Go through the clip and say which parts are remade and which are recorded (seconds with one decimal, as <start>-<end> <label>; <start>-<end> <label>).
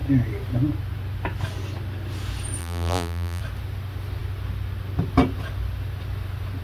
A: 0.0-2.6 recorded; 2.6-3.4 remade; 3.4-6.6 recorded